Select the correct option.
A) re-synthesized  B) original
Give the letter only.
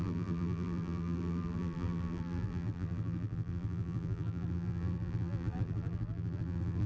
A